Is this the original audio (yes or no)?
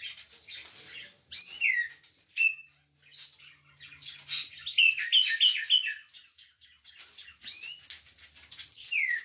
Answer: yes